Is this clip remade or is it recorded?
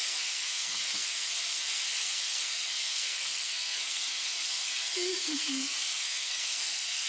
remade